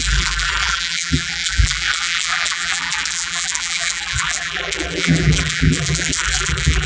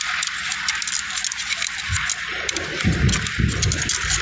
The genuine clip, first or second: second